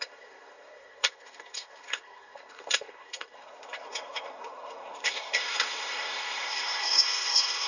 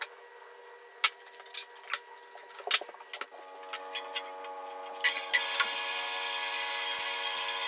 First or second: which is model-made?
first